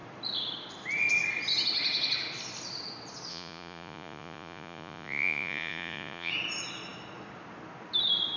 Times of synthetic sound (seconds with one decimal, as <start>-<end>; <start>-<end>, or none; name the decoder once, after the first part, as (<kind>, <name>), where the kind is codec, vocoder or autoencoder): 3.3-6.3 (vocoder, Vocos)